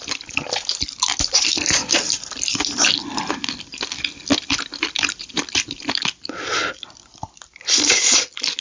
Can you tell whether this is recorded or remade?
recorded